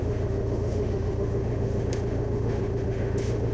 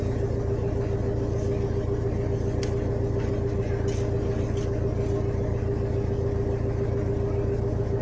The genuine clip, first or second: second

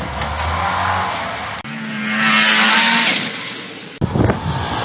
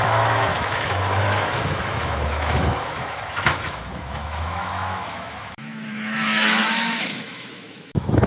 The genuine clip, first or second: first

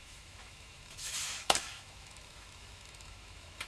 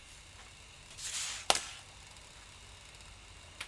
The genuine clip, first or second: second